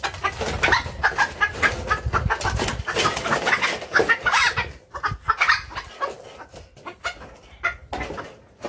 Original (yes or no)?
yes